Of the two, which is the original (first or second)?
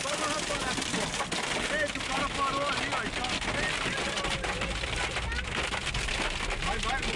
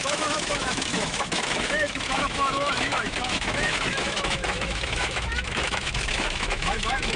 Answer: first